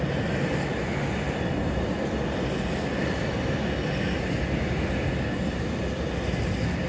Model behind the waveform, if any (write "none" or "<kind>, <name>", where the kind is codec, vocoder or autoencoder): none